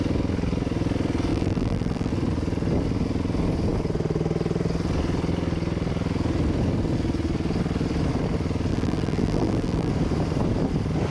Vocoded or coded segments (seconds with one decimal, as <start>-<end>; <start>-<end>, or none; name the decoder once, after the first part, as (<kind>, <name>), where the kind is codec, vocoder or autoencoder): 1.3-2.1 (vocoder, BigVGAN v2); 8.7-9.9